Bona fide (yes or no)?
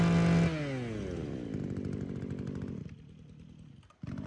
yes